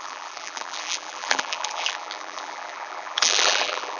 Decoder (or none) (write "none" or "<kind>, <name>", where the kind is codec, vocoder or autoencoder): vocoder, BigVGAN v2